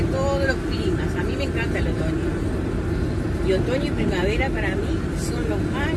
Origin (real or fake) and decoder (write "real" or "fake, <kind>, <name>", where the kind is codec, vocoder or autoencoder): real